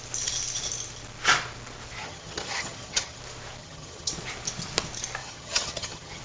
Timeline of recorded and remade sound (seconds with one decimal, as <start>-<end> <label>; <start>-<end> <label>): 0.0-2.0 recorded; 2.0-3.2 remade; 3.2-3.6 recorded; 3.6-4.1 remade; 4.1-5.2 recorded; 5.2-6.2 remade